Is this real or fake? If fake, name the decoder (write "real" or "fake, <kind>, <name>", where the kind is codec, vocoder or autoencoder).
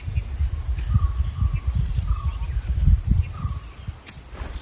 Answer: real